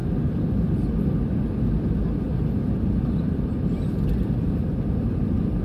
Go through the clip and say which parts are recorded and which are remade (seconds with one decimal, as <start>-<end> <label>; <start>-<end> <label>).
0.0-5.6 recorded